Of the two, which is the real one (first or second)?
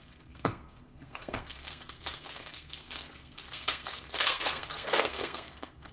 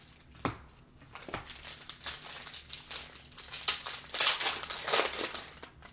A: second